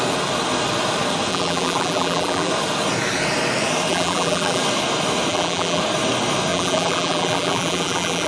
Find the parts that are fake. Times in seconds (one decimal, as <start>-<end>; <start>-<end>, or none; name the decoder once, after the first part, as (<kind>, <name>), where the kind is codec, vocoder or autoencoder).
1.3-2.5 (vocoder, BigVGAN v2); 3.9-4.6; 5.3-5.8; 6.5-8.3